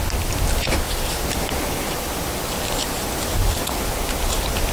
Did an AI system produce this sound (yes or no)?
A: no